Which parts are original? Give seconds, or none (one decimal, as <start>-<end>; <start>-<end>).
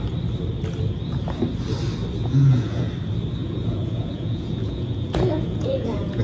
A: 0.0-2.2; 2.9-3.4